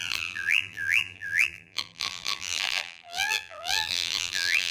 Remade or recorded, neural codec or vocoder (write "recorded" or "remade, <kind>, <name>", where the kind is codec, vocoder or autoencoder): remade, vocoder, BigVGAN v2